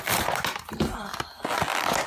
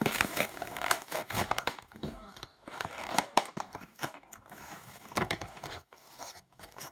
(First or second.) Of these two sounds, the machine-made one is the second